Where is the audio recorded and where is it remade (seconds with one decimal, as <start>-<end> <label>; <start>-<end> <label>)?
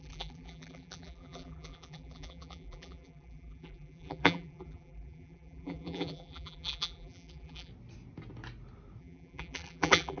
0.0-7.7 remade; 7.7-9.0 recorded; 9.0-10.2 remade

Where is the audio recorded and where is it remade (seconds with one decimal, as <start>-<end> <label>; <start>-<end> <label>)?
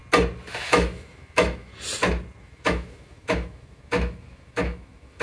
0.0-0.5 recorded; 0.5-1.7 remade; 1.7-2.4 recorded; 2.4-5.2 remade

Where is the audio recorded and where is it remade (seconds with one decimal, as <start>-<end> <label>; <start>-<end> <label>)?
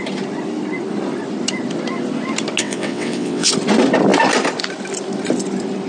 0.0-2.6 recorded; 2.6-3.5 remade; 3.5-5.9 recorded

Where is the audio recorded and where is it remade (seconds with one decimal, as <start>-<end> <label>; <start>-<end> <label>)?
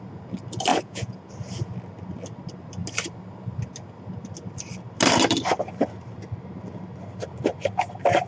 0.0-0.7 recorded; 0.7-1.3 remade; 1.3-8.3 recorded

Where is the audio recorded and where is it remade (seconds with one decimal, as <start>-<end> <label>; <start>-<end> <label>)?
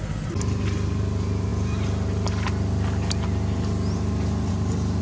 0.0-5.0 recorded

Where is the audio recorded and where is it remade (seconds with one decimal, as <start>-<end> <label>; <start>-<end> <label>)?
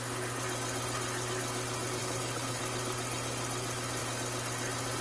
0.0-2.0 recorded; 2.0-2.6 remade; 2.6-5.0 recorded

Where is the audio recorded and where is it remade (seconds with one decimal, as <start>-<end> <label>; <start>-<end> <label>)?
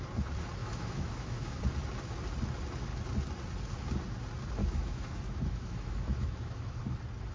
0.0-0.6 recorded; 0.6-1.6 remade; 1.6-4.6 recorded; 4.6-6.8 remade; 6.8-7.3 recorded